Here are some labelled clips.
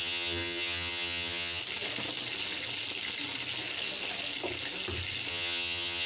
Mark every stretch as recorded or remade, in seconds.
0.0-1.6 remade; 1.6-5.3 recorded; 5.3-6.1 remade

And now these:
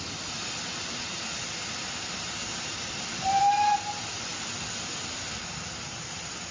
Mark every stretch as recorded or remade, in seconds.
0.0-6.5 recorded

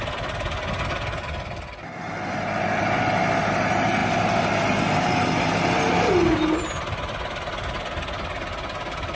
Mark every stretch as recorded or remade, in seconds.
0.0-9.2 recorded

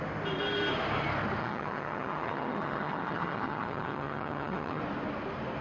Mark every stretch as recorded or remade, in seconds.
0.0-1.4 recorded; 1.4-4.8 remade; 4.8-5.6 recorded

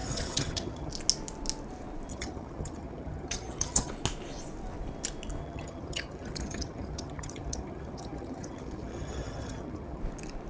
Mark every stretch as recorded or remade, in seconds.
0.0-0.9 remade; 0.9-2.1 recorded; 2.1-3.9 remade; 3.9-5.4 recorded; 5.4-10.0 remade; 10.0-10.5 recorded

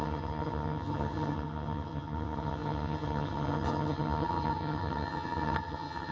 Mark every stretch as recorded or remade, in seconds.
0.0-6.1 remade